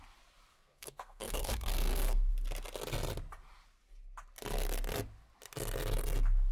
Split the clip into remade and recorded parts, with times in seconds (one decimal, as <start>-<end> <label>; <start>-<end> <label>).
0.0-0.5 recorded; 0.5-2.3 remade; 2.3-6.5 recorded